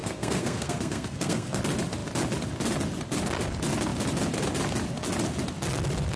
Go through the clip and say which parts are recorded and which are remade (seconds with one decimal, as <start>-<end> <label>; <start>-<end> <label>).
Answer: 0.0-1.6 remade; 1.6-6.2 recorded